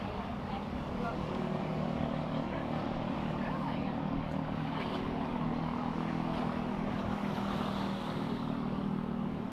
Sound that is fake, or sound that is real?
fake